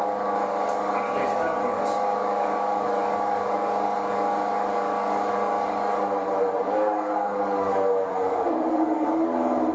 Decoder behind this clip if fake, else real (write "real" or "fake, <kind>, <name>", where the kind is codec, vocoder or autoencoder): fake, codec, DAC